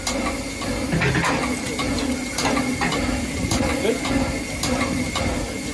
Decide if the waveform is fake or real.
real